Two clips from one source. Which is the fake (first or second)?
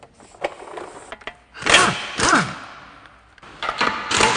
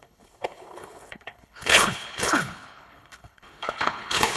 second